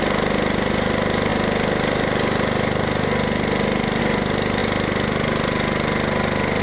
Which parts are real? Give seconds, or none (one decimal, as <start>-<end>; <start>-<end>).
0.0-6.6